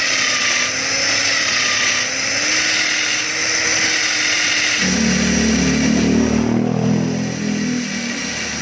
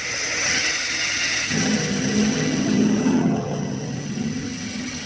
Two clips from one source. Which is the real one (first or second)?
first